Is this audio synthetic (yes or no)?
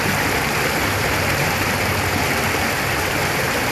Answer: no